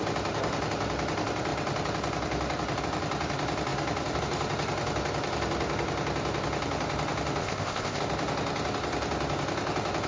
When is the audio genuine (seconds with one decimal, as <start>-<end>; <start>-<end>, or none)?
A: 0.0-7.4; 8.0-10.1